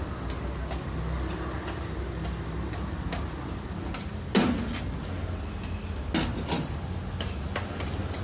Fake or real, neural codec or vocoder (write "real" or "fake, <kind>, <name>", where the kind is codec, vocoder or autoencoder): real